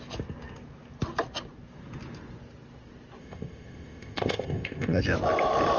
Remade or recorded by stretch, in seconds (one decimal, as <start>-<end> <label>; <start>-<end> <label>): 0.0-3.2 recorded; 3.2-5.0 remade; 5.0-5.8 recorded